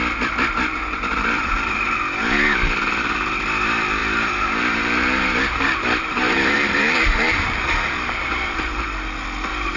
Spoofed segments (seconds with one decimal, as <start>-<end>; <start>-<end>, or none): 0.7-1.5; 4.0-8.8